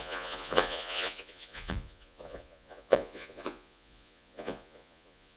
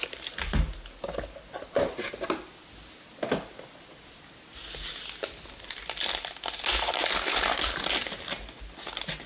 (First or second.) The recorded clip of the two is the second